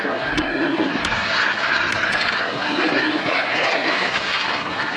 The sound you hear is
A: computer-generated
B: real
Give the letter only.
A